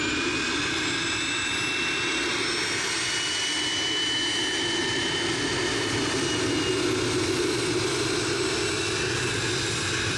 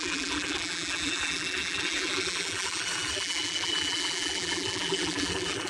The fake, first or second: second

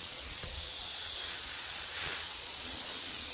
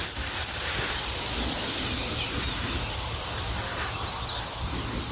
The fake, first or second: first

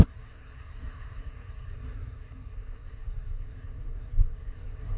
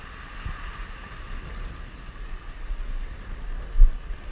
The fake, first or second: first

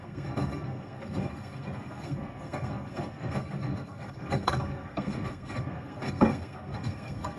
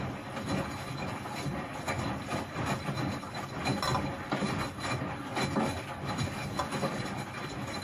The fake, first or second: first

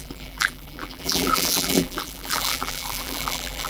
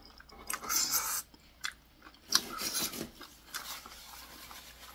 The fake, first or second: first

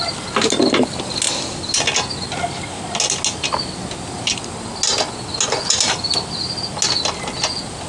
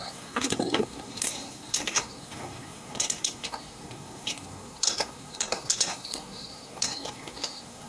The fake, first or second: second